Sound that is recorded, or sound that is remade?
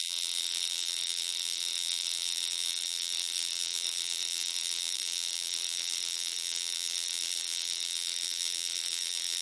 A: remade